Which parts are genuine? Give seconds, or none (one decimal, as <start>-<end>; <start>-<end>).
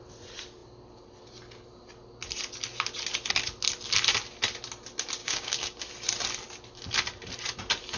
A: 0.0-5.2; 5.9-8.0